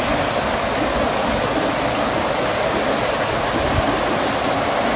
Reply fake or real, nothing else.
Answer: real